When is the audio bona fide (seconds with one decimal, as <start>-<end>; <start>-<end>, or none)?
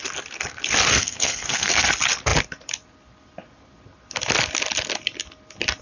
0.0-0.9; 1.9-5.8